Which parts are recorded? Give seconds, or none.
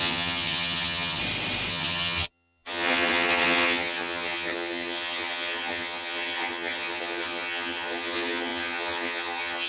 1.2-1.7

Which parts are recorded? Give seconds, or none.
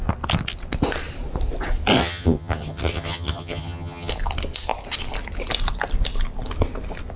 0.0-2.0; 4.1-7.2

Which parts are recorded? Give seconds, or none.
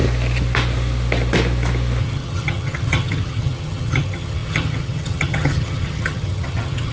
0.0-2.0